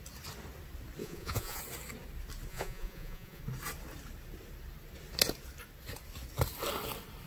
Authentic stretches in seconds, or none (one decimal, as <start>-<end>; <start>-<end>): 0.0-1.0; 1.6-2.5; 3.4-7.3